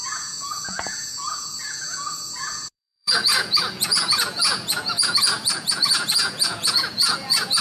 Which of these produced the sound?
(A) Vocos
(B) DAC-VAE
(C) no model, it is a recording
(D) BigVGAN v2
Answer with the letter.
A